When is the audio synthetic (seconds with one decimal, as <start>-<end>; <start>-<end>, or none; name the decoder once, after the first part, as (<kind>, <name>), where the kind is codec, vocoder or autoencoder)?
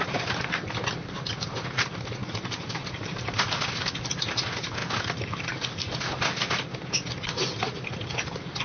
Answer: 2.2-2.9 (vocoder, BigVGAN v2)